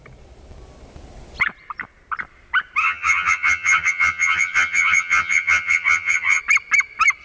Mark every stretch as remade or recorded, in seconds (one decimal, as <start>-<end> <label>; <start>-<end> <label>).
0.0-2.8 recorded; 2.8-6.4 remade; 6.4-7.2 recorded